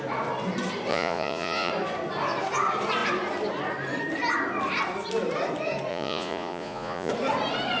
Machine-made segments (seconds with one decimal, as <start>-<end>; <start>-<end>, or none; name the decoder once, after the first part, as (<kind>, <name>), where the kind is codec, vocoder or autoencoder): 0.9-1.7 (vocoder, Vocos); 5.9-7.1